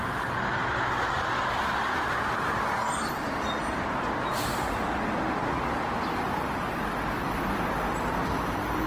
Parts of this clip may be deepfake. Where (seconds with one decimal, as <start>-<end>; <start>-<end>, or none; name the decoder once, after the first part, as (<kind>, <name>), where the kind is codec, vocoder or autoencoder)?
none